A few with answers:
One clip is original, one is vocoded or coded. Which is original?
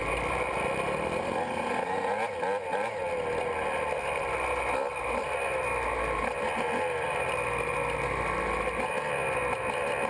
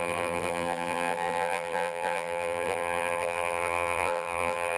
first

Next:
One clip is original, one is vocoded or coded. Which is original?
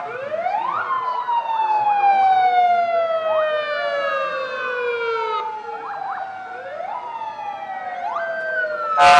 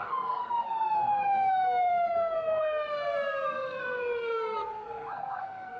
first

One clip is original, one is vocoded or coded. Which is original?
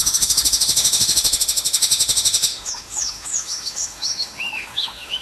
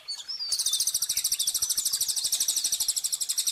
second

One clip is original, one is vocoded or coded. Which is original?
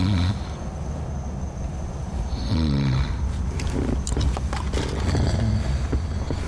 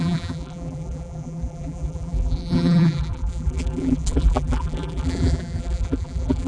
first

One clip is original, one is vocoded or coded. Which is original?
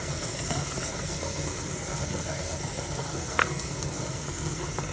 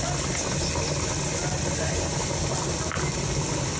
second